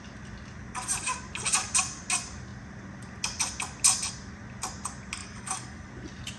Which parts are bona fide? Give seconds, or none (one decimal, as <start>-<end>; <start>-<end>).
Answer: 0.0-5.2; 5.9-6.4